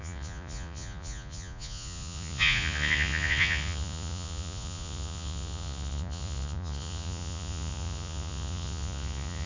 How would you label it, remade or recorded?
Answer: remade